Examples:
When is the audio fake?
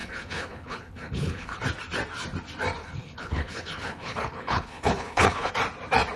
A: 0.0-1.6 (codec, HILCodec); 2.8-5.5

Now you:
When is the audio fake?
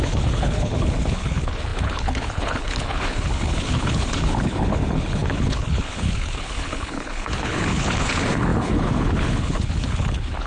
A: 0.0-10.5 (codec, HILCodec)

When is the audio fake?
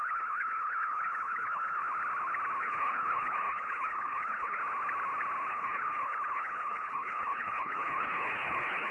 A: 0.0-1.8 (codec, HILCodec); 2.6-4.6; 5.5-8.9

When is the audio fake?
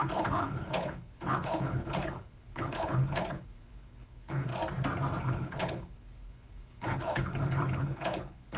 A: 0.0-4.5 (codec, HILCodec); 5.2-8.6